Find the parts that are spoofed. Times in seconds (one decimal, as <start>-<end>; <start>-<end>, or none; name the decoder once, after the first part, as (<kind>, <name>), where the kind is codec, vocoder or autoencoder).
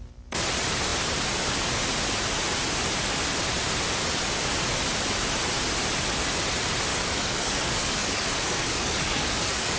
6.9-9.8 (codec, DAC)